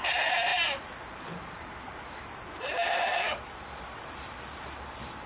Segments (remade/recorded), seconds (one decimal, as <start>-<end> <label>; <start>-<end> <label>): 0.0-5.3 recorded